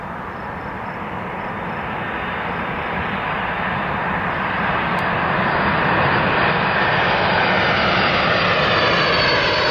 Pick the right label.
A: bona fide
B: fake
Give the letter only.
B